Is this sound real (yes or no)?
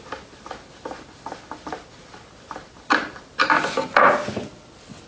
yes